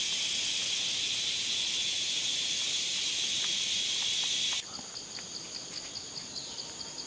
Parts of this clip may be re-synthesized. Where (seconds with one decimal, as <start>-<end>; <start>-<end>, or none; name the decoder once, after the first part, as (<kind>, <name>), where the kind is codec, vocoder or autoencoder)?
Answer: none